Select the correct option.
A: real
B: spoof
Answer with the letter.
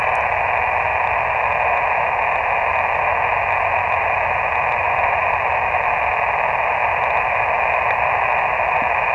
A